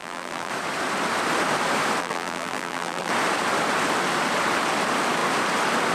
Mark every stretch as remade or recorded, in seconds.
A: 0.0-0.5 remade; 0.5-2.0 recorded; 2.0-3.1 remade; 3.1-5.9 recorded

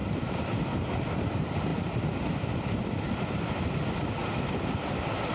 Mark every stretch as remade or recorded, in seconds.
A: 0.0-0.6 remade; 0.6-4.2 recorded; 4.2-5.3 remade

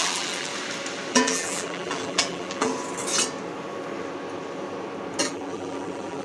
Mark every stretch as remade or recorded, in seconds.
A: 0.0-0.5 remade; 0.5-1.1 recorded; 1.1-2.7 remade; 2.7-5.2 recorded; 5.2-6.2 remade

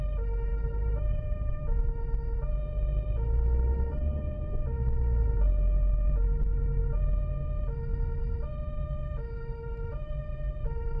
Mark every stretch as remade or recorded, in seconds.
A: 0.0-0.5 recorded; 0.5-1.5 remade; 1.5-11.0 recorded

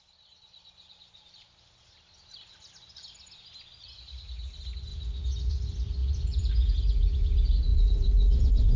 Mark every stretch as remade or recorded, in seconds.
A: 0.0-6.0 recorded; 6.0-6.5 remade; 6.5-7.7 recorded; 7.7-8.8 remade

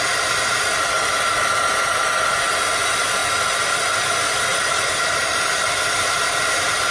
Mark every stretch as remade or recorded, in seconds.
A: 0.0-3.2 remade; 3.2-4.0 recorded; 4.0-6.9 remade

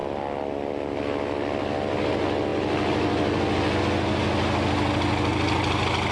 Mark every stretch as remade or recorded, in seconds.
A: 0.0-6.1 recorded

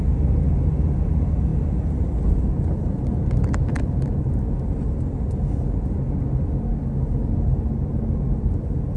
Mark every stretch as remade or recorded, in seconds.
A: 0.0-9.0 recorded